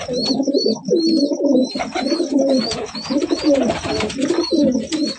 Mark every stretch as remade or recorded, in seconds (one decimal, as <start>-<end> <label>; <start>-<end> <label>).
0.0-2.6 recorded; 2.6-3.6 remade; 3.6-5.2 recorded

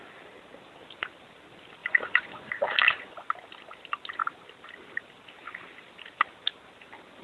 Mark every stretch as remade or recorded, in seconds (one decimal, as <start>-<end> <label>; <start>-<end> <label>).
0.0-1.8 recorded; 1.8-3.3 remade; 3.3-7.2 recorded

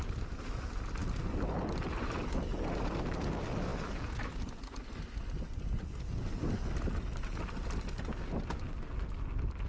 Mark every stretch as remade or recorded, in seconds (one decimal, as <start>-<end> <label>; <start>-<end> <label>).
0.0-9.7 recorded

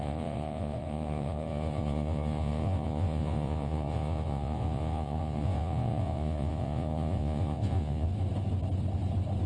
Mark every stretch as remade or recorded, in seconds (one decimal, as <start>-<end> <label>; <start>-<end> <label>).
0.0-8.1 remade; 8.1-9.5 recorded

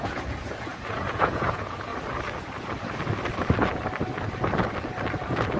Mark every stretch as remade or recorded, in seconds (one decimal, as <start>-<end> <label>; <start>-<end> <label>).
0.0-1.9 remade; 1.9-5.6 recorded

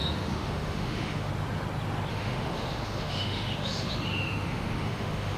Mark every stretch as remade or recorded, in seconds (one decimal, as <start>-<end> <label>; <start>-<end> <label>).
0.0-1.3 remade; 1.3-2.1 recorded; 2.1-5.4 remade